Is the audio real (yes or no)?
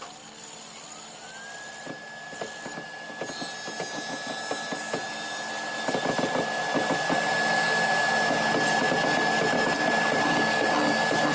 yes